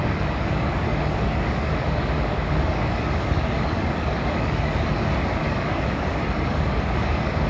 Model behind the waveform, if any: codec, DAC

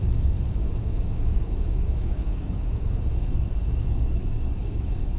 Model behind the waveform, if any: codec, DAC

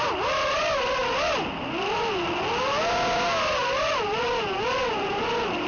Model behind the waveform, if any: none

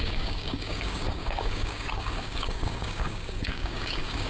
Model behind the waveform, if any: codec, DAC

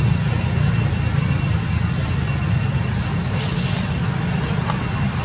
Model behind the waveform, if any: none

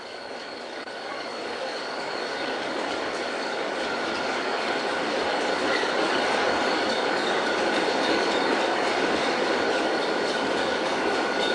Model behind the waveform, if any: codec, DAC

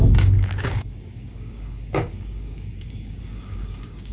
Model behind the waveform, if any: codec, DAC